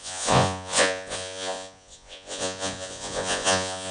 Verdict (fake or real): fake